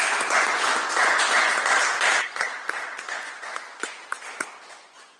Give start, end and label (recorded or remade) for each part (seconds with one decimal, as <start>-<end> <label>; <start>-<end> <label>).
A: 0.0-1.5 remade; 1.5-3.2 recorded; 3.2-4.1 remade; 4.1-4.7 recorded; 4.7-5.2 remade